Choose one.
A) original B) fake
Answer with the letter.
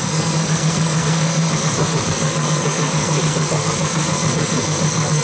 B